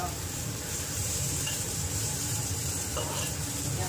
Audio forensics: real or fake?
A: fake